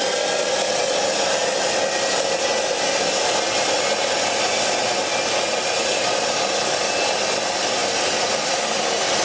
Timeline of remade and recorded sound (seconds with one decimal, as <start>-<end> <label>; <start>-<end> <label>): 0.0-9.2 recorded